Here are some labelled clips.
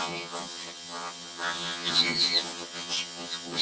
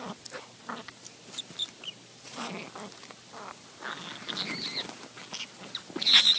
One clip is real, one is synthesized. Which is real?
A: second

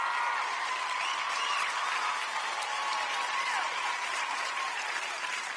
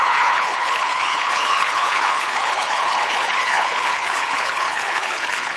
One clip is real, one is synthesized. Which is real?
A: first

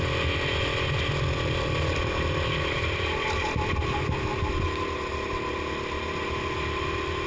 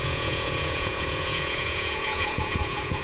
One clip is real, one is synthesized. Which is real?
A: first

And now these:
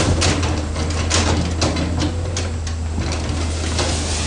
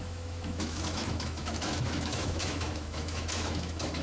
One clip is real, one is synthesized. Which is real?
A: first